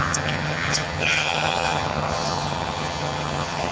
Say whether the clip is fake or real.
fake